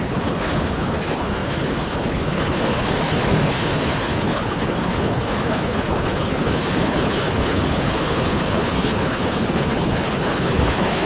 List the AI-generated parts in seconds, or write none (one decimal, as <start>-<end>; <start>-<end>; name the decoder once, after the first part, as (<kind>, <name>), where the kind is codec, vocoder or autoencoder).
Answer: 0.0-11.1 (codec, HILCodec)